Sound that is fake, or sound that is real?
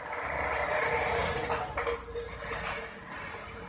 real